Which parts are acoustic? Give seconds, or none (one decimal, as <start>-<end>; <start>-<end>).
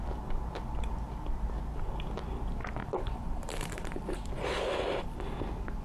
0.0-2.8; 4.3-5.8